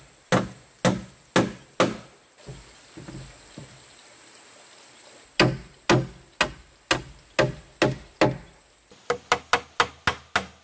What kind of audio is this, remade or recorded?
recorded